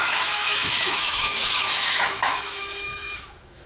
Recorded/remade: remade